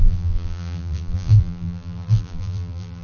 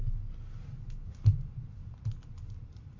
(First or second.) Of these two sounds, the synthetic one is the first